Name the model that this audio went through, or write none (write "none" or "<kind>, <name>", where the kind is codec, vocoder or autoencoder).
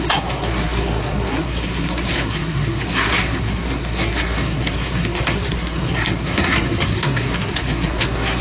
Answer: codec, SNAC